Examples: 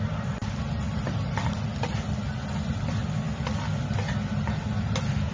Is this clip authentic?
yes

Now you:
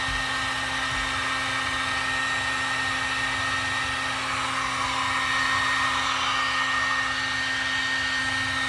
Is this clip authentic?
yes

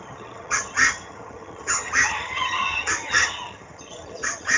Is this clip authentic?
no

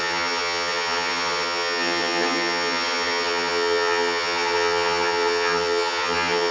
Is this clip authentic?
no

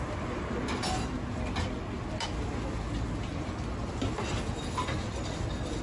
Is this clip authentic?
yes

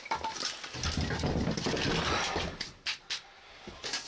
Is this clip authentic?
yes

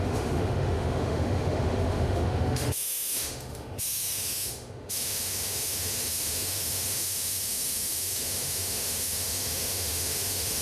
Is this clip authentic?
no